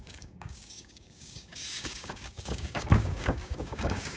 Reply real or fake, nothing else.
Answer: fake